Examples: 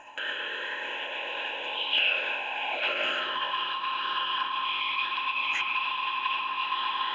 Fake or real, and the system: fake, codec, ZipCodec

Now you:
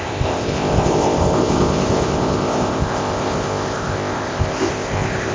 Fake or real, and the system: fake, codec, ZipCodec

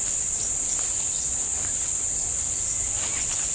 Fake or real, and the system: real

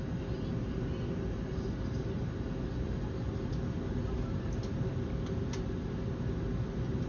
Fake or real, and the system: real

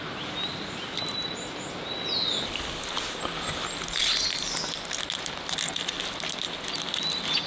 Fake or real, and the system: real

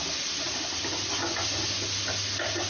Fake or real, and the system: real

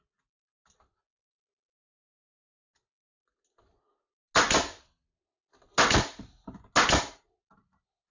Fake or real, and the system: real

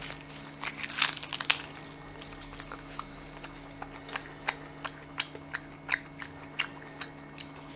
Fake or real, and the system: real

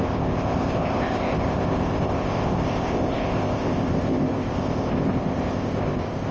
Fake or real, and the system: fake, codec, ZipCodec